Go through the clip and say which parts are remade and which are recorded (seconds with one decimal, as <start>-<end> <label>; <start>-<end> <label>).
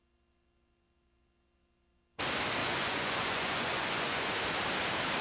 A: 0.0-2.6 recorded; 2.6-4.3 remade; 4.3-5.2 recorded